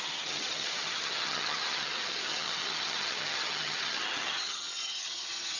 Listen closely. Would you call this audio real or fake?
fake